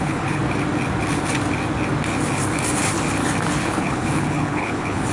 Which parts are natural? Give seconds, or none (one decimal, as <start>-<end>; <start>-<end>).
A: 0.4-3.5